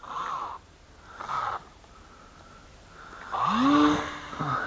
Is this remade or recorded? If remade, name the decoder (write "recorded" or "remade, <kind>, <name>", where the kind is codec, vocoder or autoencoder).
recorded